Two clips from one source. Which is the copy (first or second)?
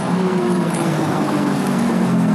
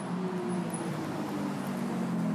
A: first